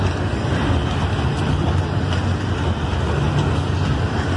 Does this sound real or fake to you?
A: real